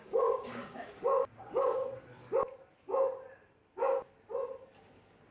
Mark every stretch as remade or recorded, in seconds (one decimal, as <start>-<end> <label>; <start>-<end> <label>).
0.0-1.8 remade; 1.8-5.3 recorded